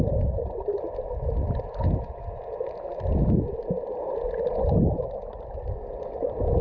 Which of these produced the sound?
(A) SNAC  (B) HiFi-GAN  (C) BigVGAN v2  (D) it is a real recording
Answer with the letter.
D